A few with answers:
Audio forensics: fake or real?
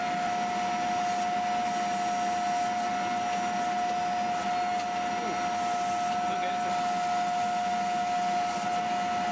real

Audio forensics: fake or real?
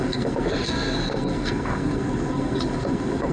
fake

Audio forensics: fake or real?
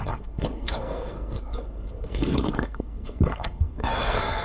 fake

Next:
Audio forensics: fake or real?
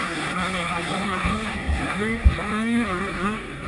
fake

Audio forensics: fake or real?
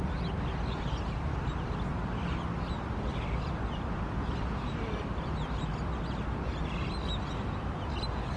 real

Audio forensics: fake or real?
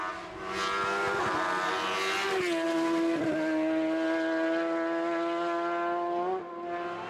real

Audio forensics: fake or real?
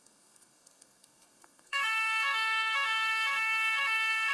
fake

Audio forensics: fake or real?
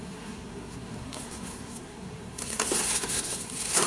fake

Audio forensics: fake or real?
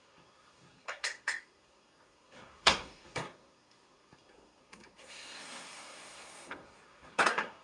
fake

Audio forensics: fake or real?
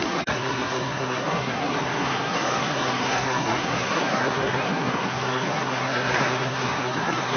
fake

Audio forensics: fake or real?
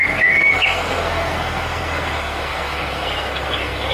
fake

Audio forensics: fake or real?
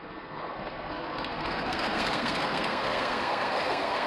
fake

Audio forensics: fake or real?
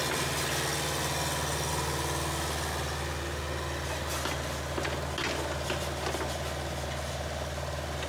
real